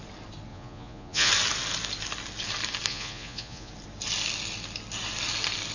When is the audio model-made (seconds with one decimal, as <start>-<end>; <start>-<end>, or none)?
0.5-1.3; 2.9-3.7